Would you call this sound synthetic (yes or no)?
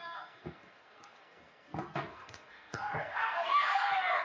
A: yes